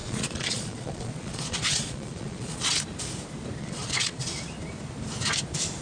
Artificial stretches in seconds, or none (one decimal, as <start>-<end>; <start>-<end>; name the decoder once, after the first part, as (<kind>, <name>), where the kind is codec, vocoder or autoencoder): 0.0-2.7 (vocoder, Vocos); 3.6-4.2